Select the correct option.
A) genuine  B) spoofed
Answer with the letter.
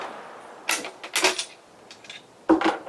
A